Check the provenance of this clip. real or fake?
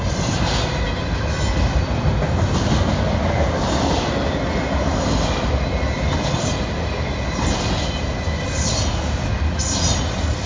real